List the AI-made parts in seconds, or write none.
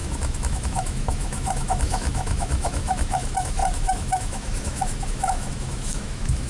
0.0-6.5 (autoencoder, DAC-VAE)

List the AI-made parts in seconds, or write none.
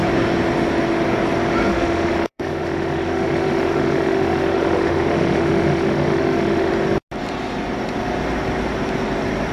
1.7-6.7 (autoencoder, DAC-VAE)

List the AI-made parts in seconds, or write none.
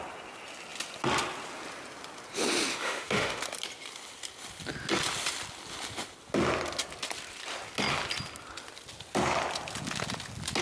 2.7-3.4 (autoencoder, DAC-VAE)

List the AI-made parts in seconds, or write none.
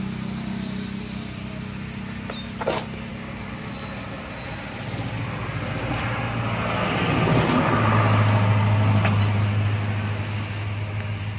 none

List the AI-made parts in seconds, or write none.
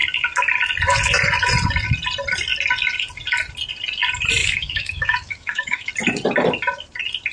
4.4-5.9 (autoencoder, DAC-VAE)